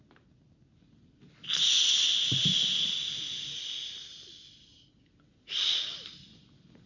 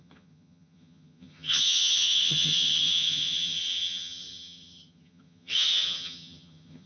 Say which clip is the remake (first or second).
second